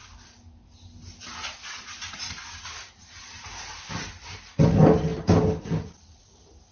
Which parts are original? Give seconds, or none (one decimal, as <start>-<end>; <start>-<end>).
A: 0.0-6.7